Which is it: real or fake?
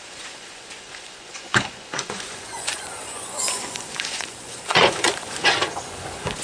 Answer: fake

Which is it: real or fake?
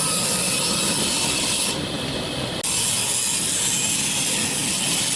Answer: real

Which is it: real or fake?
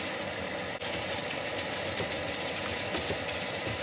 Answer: real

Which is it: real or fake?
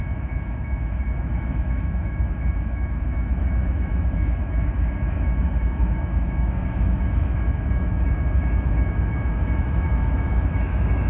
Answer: fake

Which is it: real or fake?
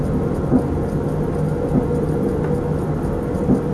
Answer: real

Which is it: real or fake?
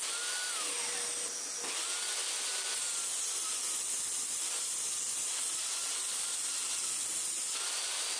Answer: real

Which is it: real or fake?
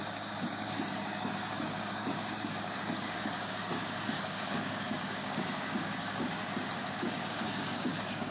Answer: fake